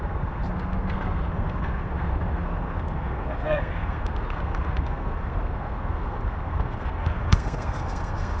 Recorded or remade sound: remade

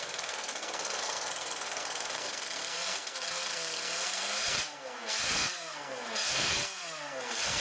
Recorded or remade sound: remade